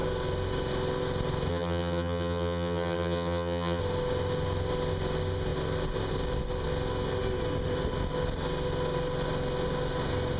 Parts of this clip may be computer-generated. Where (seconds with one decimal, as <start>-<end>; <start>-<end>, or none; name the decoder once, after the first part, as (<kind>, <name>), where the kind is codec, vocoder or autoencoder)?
1.5-3.8 (vocoder, HiFi-GAN)